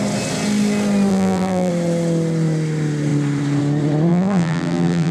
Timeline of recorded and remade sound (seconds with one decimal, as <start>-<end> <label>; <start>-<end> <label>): 0.0-1.1 recorded; 1.1-1.7 remade; 1.7-4.1 recorded; 4.1-5.1 remade